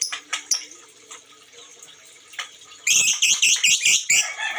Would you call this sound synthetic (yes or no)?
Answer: yes